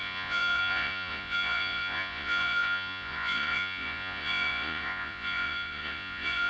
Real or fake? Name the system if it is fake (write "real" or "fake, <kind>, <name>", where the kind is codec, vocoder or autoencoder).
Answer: fake, vocoder, Vocos